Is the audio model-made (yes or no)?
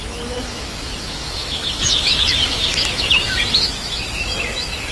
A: yes